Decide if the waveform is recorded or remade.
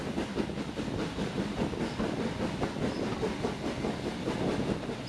recorded